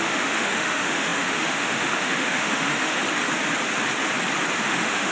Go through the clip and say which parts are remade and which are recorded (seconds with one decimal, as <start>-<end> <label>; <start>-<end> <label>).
0.0-2.9 remade; 2.9-4.6 recorded; 4.6-5.1 remade